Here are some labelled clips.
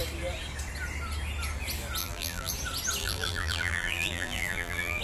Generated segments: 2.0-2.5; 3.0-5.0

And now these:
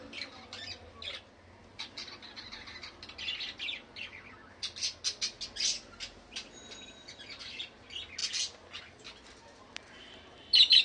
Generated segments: none

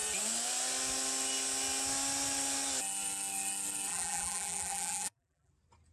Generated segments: 3.9-5.5

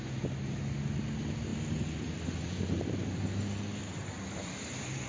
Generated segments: 1.5-3.2; 3.8-5.1

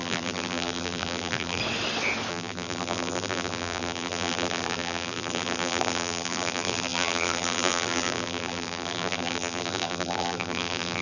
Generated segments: 0.0-1.6; 2.3-11.0

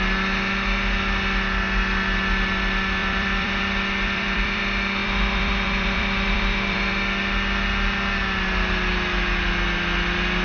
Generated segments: 3.0-4.6; 5.0-6.9

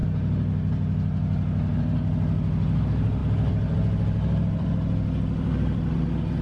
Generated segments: 3.2-5.9

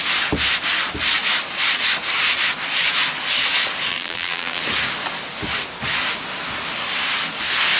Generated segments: 3.9-4.6